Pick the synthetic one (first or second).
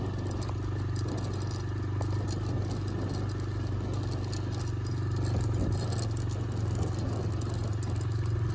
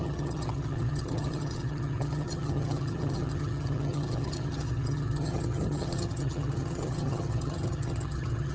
second